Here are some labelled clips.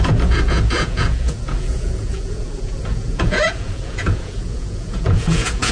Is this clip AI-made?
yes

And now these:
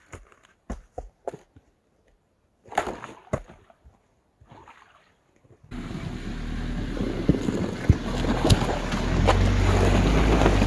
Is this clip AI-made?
no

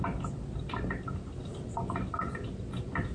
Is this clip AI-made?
no